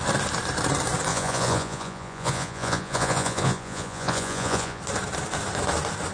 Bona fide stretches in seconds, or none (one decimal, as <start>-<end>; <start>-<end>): 0.0-1.1; 4.8-6.1